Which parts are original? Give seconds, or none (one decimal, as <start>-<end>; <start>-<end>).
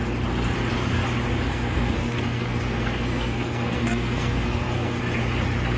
0.0-1.5; 5.0-5.8